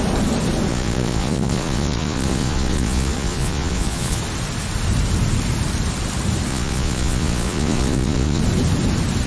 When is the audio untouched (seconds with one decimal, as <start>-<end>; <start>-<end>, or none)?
0.0-0.7; 4.2-6.5; 8.4-9.3